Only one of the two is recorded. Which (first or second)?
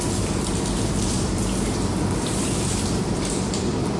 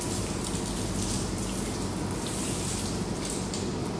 second